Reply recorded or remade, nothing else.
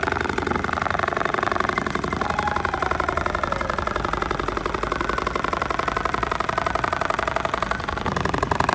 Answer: remade